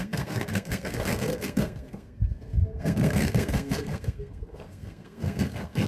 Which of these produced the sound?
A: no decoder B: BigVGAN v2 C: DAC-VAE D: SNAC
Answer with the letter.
D